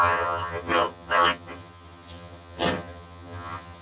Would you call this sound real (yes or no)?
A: no